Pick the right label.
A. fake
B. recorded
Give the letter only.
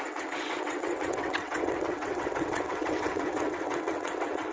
A